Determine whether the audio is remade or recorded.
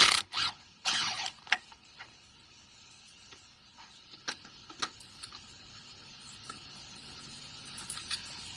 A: remade